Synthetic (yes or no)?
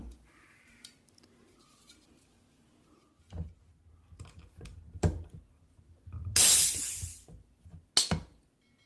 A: no